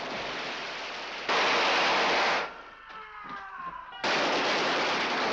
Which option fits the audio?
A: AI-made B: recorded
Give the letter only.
B